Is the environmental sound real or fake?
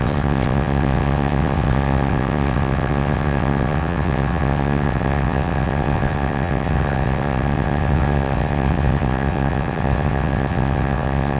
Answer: fake